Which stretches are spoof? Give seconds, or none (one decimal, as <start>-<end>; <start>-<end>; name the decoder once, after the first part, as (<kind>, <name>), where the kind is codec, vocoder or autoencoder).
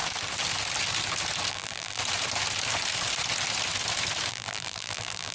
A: 1.5-2.0 (vocoder, BigVGAN v2); 4.3-5.3